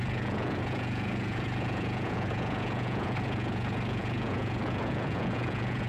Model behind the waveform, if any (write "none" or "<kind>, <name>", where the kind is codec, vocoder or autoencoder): vocoder, Vocos